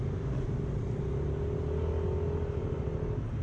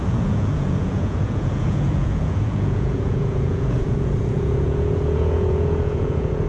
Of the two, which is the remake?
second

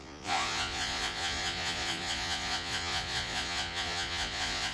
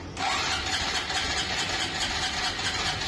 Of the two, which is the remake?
first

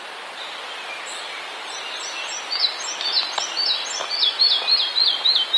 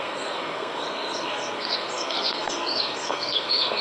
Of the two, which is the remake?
second